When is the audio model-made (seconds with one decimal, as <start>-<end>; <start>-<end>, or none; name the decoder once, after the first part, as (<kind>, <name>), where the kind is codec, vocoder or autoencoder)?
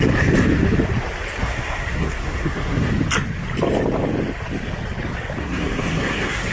1.4-2.9 (codec, SNAC); 5.4-6.5